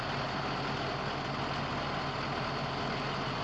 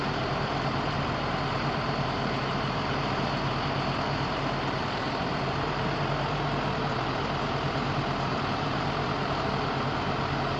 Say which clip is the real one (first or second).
first